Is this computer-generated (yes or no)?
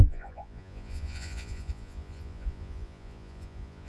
yes